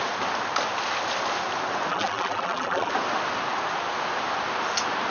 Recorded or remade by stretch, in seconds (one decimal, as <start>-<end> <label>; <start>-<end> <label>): 0.0-1.9 recorded; 1.9-2.9 remade; 2.9-5.1 recorded